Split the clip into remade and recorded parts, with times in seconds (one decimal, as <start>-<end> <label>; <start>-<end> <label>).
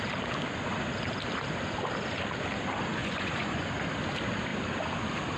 0.0-3.0 recorded; 3.0-3.7 remade; 3.7-5.4 recorded